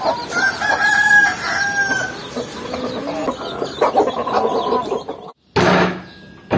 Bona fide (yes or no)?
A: yes